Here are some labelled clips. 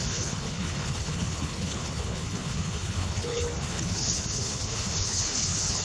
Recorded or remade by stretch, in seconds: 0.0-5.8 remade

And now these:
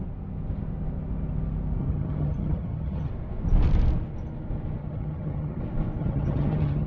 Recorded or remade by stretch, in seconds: 0.0-1.8 recorded; 1.8-3.1 remade; 3.1-4.8 recorded; 4.8-5.6 remade; 5.6-6.0 recorded; 6.0-6.9 remade

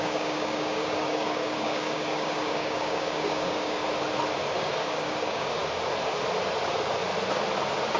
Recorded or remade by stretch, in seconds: 0.0-3.8 remade; 3.8-4.5 recorded; 4.5-5.6 remade; 5.6-8.0 recorded

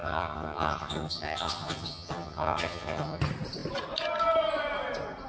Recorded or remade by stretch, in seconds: 0.0-3.2 remade; 3.2-5.3 recorded

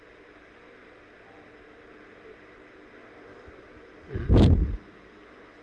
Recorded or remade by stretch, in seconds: 0.0-5.6 recorded

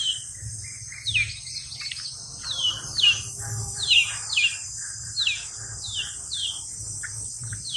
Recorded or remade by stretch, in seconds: 0.0-0.6 remade; 0.6-2.2 recorded; 2.2-7.8 remade

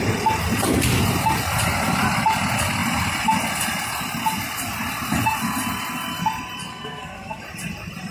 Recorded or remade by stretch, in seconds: 0.0-6.7 recorded; 6.7-7.4 remade; 7.4-8.1 recorded

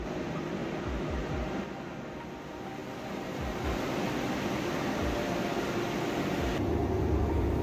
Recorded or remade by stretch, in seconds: 0.0-0.6 recorded; 0.6-1.6 remade; 1.6-7.6 recorded